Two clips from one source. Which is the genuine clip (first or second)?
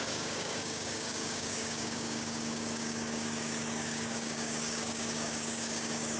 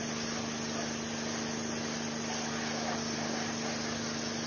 second